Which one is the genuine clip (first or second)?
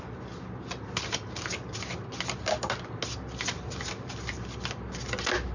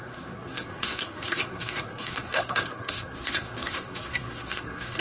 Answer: first